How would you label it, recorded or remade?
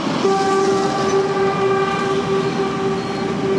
recorded